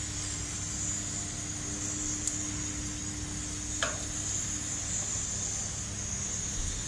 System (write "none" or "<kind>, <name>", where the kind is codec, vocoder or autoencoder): none